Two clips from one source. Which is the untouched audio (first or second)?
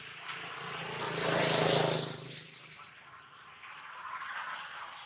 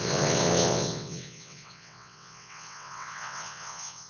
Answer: first